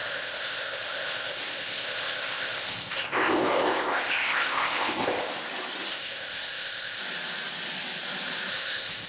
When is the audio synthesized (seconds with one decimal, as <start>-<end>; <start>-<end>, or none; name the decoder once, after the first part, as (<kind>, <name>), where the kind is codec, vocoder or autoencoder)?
0.0-5.3 (codec, ZipCodec); 5.9-7.0; 8.5-9.1